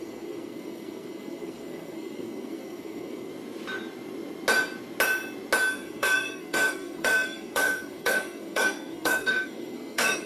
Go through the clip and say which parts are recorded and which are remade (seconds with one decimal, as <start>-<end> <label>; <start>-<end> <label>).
0.0-3.3 remade; 3.3-5.7 recorded; 5.7-10.3 remade